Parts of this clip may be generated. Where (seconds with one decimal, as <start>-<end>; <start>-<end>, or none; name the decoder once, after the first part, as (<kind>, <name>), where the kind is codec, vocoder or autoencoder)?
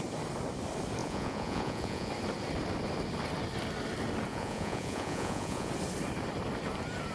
1.0-2.1 (vocoder, Vocos); 4.3-5.7